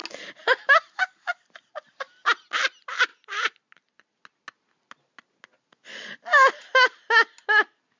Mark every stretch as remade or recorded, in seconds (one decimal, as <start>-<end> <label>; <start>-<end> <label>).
0.0-8.0 recorded